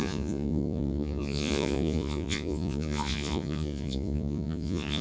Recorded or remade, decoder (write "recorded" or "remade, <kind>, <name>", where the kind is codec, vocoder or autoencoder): remade, vocoder, Vocos